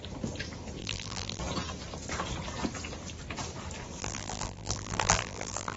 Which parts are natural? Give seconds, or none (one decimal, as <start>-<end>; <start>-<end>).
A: 0.0-0.8; 1.4-4.0